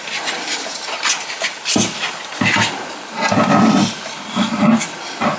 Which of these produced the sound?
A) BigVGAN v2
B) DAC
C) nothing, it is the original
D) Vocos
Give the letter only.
C